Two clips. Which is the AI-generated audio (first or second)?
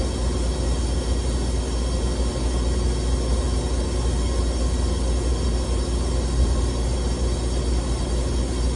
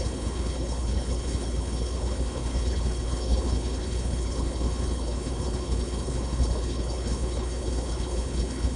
second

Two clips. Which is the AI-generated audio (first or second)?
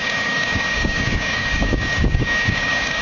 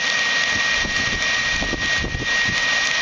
first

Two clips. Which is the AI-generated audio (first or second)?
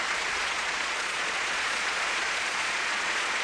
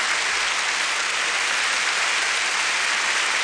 first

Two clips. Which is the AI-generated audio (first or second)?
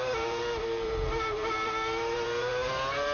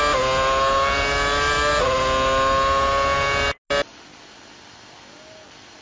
first